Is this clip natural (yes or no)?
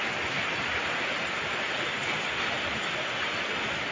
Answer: yes